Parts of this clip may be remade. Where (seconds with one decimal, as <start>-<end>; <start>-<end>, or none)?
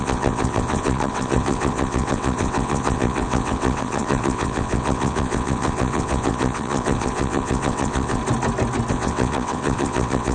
0.0-8.2; 8.9-10.3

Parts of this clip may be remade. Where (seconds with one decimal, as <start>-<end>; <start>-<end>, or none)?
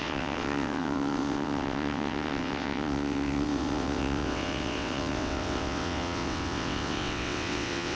0.0-7.9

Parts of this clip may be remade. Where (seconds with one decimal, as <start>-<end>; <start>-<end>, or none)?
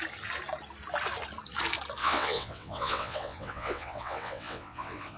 2.0-5.2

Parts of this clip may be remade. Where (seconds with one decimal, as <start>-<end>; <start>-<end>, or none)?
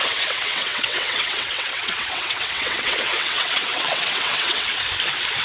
0.0-4.7